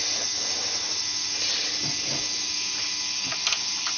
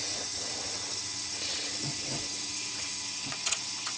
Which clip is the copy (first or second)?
second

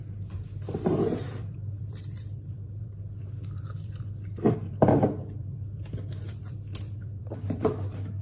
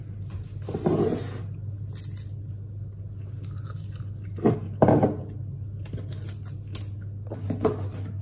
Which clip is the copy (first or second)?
first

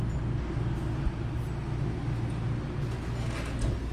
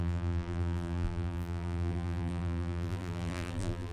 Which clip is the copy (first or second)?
second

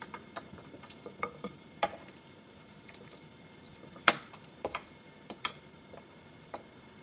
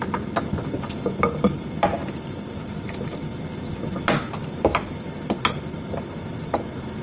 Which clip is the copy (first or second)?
first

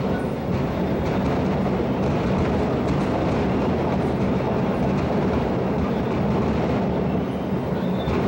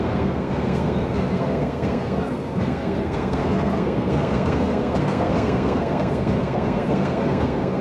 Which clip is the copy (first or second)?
second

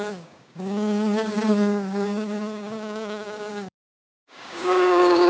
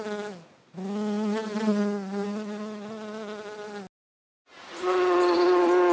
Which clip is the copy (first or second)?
first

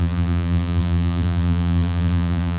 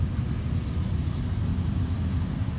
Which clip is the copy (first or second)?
first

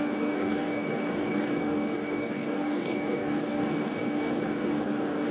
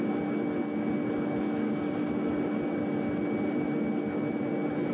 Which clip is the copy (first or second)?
first